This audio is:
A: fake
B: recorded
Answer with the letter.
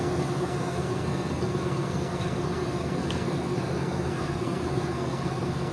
A